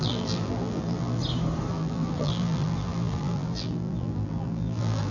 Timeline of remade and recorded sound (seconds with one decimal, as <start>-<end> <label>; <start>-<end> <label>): 0.0-1.2 remade; 1.2-1.7 recorded; 1.7-5.1 remade